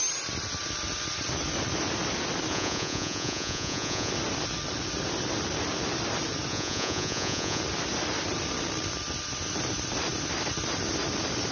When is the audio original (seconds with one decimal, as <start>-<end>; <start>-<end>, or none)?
0.0-2.5; 4.1-6.5; 7.6-11.5